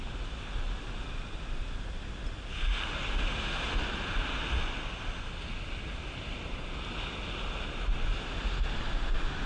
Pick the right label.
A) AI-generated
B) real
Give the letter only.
B